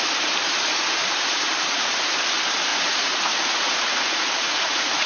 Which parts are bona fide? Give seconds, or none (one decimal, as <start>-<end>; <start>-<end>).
0.0-1.0; 1.5-2.7

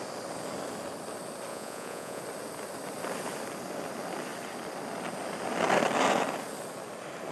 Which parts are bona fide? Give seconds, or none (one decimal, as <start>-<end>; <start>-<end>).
0.0-1.5; 2.2-7.3

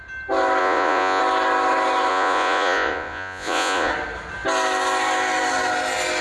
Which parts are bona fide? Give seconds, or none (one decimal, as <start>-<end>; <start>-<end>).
0.0-0.6; 1.2-2.1; 3.9-6.2

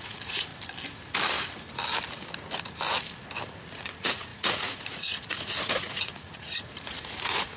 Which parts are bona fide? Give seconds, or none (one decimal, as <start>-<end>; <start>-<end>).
0.5-3.7

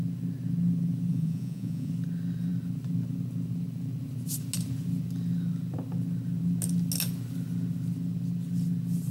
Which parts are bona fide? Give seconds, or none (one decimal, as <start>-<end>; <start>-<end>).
0.0-1.1; 1.9-9.1

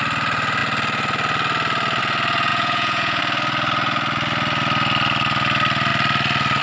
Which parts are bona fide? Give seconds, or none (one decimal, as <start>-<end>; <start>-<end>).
0.0-2.5; 3.2-6.6

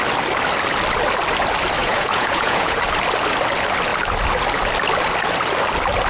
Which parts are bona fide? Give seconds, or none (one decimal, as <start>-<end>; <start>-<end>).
0.0-1.8; 2.8-6.1

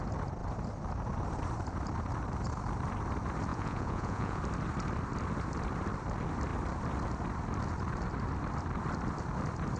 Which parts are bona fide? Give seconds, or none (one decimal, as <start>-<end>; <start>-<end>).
0.0-3.5; 4.4-9.8